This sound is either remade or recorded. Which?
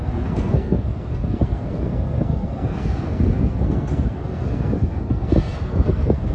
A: remade